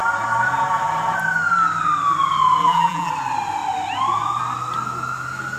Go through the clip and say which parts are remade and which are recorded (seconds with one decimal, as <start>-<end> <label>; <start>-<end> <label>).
0.0-2.6 recorded; 2.6-3.1 remade; 3.1-5.6 recorded